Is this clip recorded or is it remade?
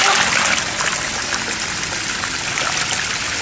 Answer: recorded